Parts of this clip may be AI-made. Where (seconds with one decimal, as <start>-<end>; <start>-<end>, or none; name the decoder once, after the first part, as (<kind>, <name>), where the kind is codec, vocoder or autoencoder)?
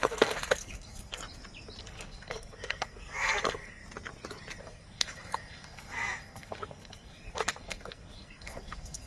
0.0-1.2 (codec, SNAC); 1.8-3.8; 4.6-9.1